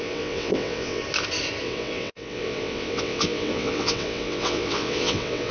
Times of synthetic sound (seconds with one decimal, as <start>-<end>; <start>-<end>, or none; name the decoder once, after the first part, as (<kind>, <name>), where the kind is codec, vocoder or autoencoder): 0.0-1.0 (vocoder, WaveNeXt); 1.6-5.5